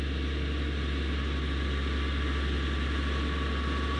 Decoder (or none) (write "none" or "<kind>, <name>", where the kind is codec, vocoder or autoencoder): none